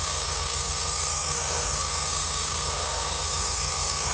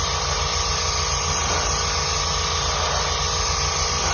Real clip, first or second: second